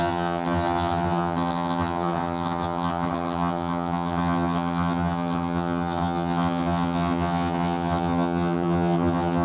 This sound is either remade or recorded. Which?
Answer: remade